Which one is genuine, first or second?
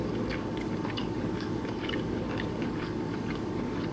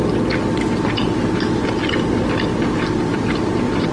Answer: second